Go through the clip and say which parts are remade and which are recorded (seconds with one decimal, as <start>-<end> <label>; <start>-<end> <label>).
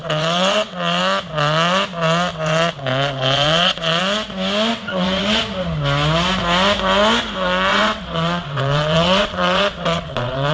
0.0-1.0 remade; 1.0-2.3 recorded; 2.3-4.0 remade; 4.0-4.7 recorded; 4.7-5.4 remade; 5.4-7.7 recorded; 7.7-10.5 remade